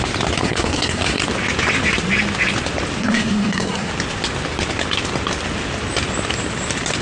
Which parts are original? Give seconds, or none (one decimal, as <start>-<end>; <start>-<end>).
0.0-0.4; 1.2-3.0; 3.9-7.0